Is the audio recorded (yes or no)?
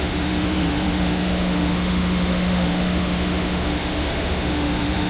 no